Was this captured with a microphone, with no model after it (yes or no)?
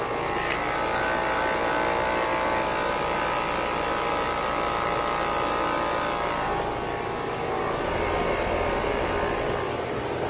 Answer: yes